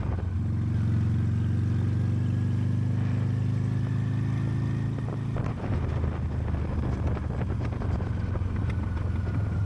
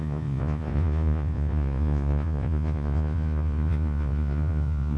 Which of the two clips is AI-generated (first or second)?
second